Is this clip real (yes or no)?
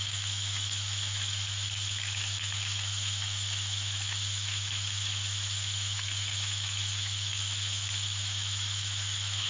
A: no